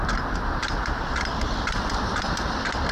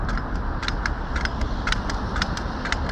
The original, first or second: second